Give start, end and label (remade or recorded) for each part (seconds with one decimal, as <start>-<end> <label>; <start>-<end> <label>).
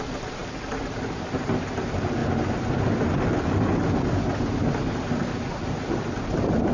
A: 0.0-2.2 remade; 2.2-6.2 recorded; 6.2-6.7 remade